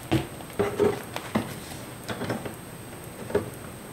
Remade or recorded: recorded